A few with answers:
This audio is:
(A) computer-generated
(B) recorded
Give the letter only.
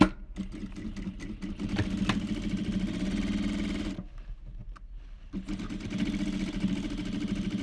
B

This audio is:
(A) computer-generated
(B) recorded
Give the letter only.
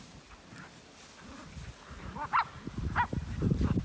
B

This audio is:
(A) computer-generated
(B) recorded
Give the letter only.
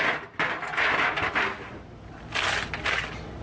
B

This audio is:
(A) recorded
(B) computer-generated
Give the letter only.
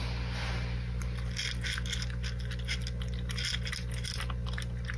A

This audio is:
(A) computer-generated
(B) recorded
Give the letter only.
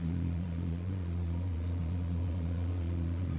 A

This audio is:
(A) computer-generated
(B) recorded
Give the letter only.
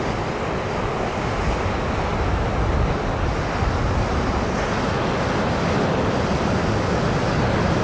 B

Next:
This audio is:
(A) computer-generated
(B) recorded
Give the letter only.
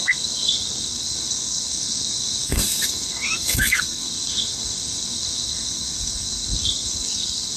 A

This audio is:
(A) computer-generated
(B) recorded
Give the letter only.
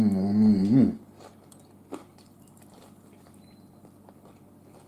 B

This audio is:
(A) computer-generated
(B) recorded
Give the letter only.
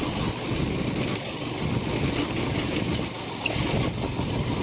B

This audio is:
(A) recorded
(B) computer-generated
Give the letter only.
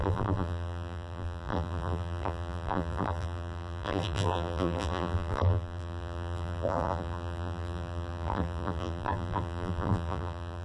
B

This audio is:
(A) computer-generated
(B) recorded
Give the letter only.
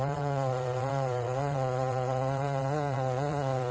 A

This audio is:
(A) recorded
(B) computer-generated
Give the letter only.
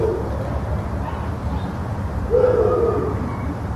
A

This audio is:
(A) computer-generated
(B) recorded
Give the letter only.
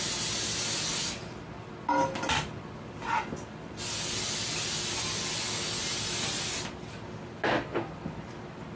B